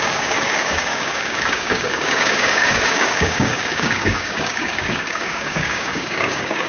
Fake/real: fake